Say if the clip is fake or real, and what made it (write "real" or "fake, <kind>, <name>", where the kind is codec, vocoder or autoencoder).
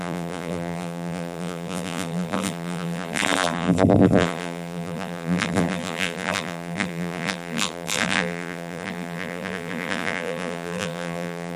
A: fake, vocoder, BigVGAN v2